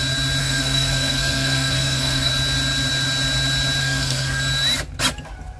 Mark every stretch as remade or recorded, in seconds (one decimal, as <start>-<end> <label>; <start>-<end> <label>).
0.0-0.4 recorded; 0.4-2.3 remade; 2.3-3.8 recorded; 3.8-4.4 remade; 4.4-5.6 recorded

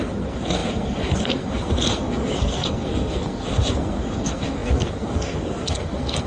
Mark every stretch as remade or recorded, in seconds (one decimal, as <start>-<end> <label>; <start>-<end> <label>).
0.0-6.3 remade